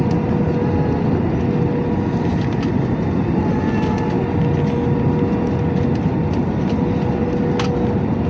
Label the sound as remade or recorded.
recorded